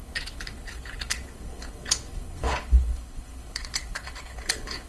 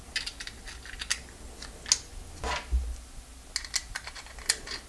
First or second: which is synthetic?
first